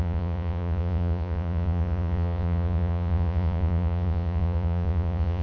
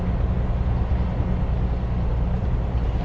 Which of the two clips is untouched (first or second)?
second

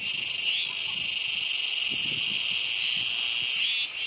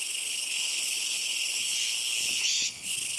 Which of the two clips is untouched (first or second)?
first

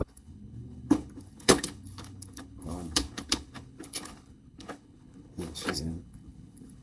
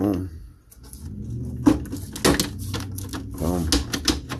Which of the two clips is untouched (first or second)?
second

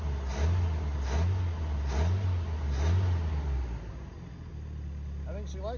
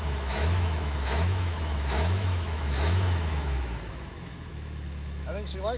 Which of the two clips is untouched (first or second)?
first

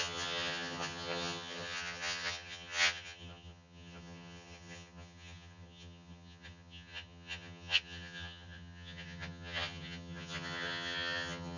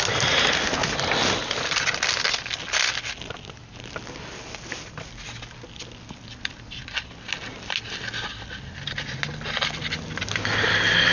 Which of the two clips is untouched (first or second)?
second